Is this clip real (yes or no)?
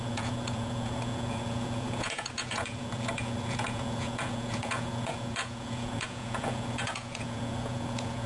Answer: no